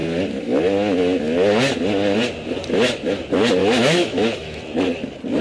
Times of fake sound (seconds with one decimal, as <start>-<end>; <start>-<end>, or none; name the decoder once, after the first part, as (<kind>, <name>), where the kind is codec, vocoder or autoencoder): 3.6-4.6 (autoencoder, DAC-VAE)